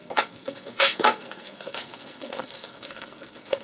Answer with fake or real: fake